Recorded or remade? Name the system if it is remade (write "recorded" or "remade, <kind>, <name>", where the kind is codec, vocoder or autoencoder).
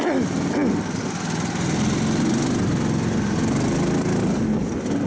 recorded